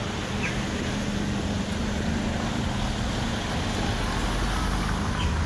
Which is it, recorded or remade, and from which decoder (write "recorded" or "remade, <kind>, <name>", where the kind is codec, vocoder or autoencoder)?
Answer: recorded